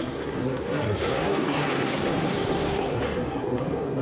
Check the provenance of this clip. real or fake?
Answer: fake